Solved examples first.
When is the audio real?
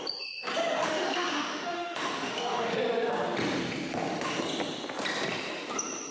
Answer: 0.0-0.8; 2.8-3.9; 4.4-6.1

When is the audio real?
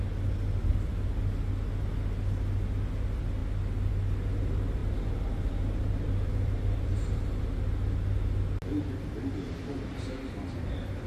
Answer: 0.0-4.8; 7.4-11.1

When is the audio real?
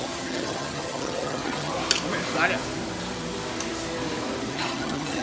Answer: 1.7-4.5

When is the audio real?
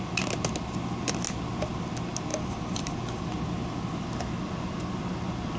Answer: 0.0-2.3; 2.9-5.6